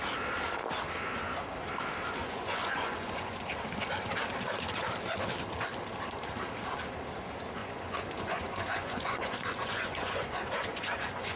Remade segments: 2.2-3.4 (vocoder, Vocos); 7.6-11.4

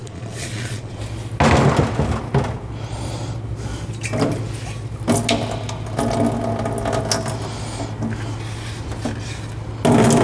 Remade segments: 0.0-1.0 (vocoder, Vocos)

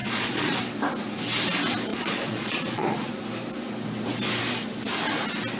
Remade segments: 0.0-0.6 (vocoder, Vocos); 1.9-3.1

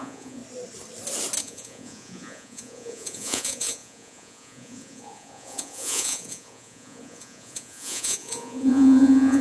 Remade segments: 0.0-0.4 (vocoder, Vocos); 1.4-9.4

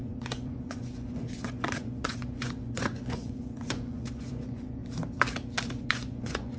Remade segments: 0.0-4.8 (vocoder, Vocos); 5.8-6.6

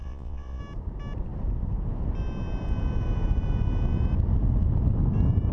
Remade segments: 0.0-0.6 (vocoder, Vocos)

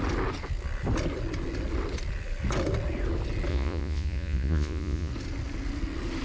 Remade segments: 3.5-5.1 (vocoder, Vocos)

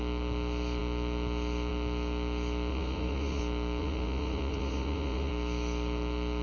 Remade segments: 2.7-3.4 (vocoder, Vocos); 3.8-5.3